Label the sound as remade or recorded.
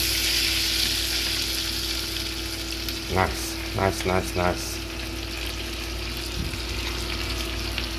recorded